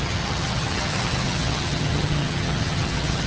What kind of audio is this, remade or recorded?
remade